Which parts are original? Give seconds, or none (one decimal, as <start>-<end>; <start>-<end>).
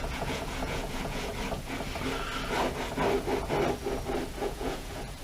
1.3-4.4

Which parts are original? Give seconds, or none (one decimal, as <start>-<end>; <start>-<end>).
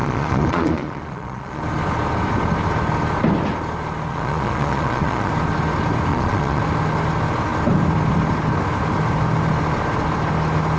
1.6-4.1; 5.3-6.1; 6.6-10.8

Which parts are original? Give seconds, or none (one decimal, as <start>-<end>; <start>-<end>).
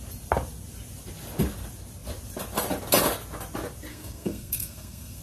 0.0-3.9